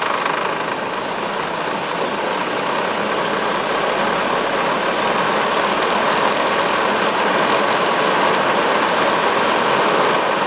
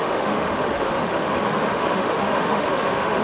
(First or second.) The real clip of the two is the first